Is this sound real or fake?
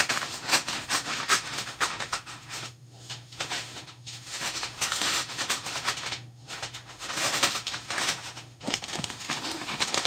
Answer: fake